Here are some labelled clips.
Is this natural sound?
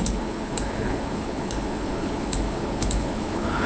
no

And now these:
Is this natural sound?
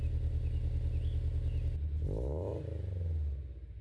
yes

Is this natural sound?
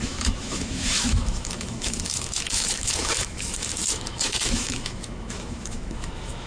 no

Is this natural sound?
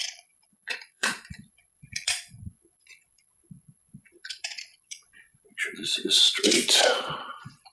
no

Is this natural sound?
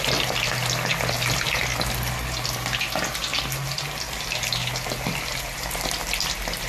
yes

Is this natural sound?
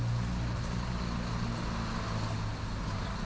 yes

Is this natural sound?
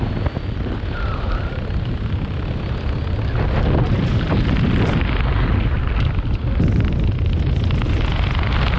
yes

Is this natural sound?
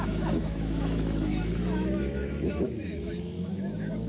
no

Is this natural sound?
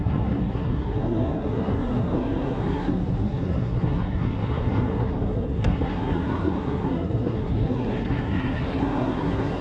no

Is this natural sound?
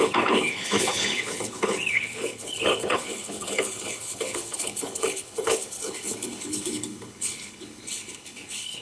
no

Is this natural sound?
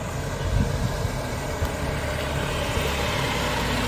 yes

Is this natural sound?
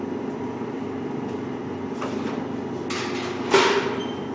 yes